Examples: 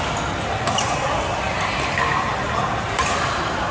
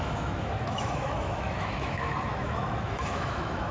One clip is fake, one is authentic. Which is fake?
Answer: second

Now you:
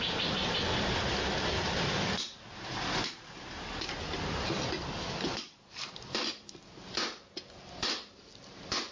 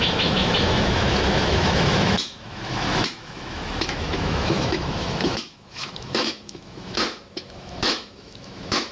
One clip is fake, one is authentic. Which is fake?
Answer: second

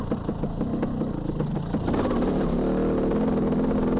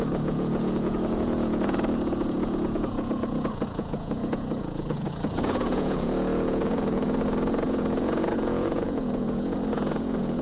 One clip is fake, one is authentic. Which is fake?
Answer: second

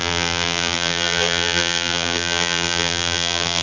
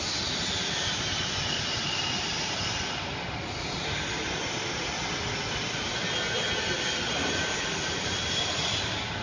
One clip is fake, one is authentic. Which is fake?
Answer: first